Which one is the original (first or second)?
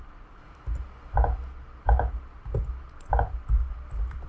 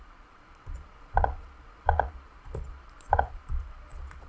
first